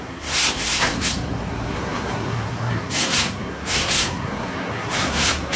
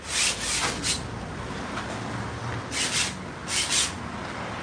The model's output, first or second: first